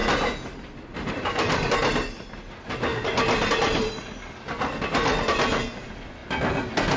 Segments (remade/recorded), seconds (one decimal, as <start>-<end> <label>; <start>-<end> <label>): 0.0-7.0 recorded